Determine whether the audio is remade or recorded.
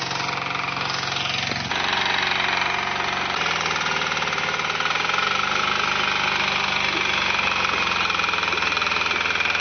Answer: recorded